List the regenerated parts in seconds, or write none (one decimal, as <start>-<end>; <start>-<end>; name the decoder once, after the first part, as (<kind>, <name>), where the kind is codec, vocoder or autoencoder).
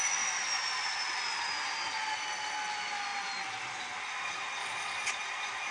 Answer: 4.6-5.1 (vocoder, Vocos)